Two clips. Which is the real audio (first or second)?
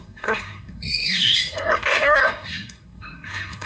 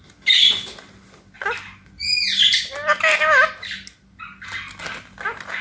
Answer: second